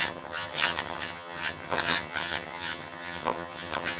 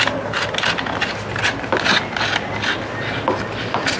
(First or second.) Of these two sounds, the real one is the second